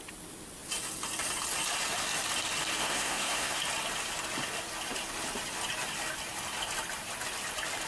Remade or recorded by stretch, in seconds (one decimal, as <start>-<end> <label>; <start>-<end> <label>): 0.0-2.8 recorded; 2.8-3.6 remade; 3.6-7.9 recorded